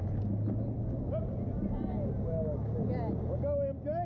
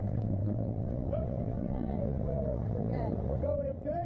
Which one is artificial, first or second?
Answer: second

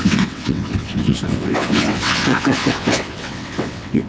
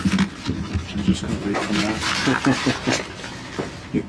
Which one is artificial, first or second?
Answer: first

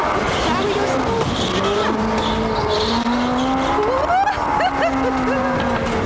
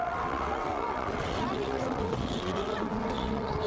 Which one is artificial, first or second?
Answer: second